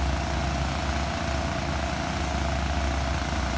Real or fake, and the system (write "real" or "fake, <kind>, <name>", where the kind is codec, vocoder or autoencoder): real